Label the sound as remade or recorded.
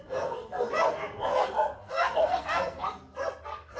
remade